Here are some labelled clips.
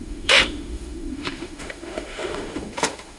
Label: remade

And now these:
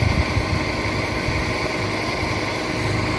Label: recorded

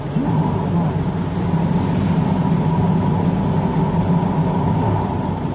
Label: recorded